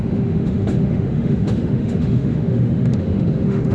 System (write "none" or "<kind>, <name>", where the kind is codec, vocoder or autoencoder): autoencoder, DAC-VAE